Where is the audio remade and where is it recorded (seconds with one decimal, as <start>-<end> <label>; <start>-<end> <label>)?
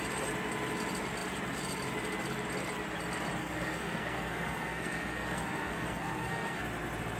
0.0-3.4 recorded; 3.4-6.6 remade; 6.6-7.2 recorded